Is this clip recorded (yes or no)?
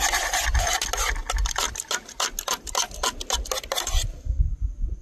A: yes